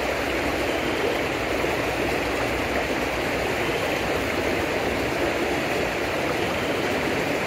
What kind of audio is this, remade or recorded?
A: remade